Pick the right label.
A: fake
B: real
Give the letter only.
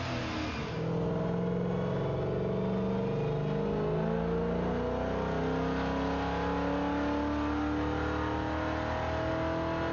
B